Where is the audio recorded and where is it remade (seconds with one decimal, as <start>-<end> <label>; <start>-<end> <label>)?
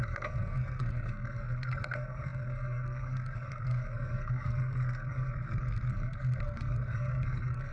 0.0-7.7 remade